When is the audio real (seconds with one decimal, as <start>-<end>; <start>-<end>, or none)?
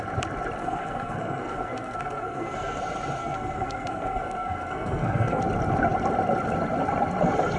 0.0-0.6; 2.8-3.2; 5.4-7.6